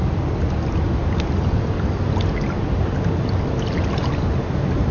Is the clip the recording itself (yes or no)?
yes